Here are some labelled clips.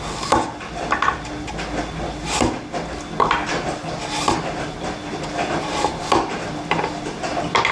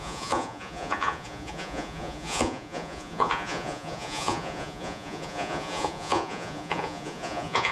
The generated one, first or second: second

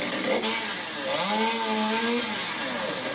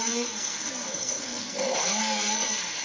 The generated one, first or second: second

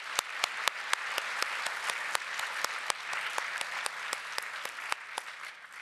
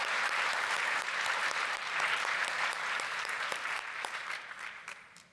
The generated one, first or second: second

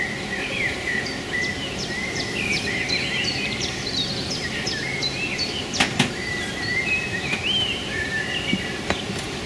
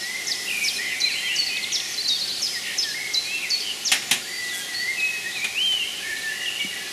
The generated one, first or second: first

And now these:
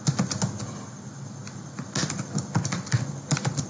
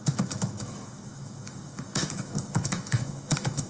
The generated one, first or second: second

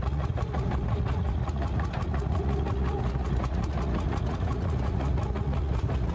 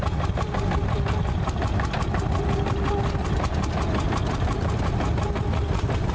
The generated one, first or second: first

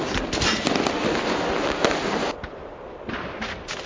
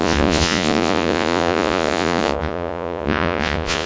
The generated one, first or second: second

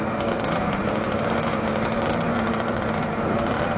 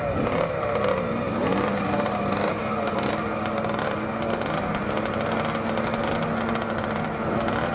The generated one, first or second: first